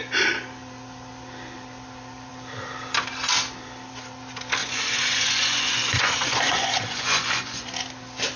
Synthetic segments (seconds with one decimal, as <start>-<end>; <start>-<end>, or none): 4.6-7.7